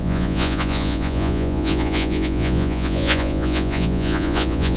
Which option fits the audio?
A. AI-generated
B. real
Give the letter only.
A